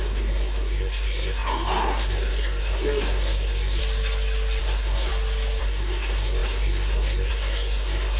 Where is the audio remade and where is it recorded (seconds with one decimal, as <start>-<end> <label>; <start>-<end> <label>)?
0.0-3.8 remade; 3.8-4.6 recorded; 4.6-5.1 remade; 5.1-5.6 recorded; 5.6-8.2 remade